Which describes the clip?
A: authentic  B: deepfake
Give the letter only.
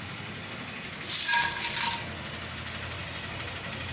A